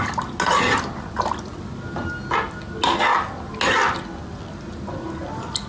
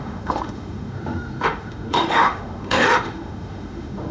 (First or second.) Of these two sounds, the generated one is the second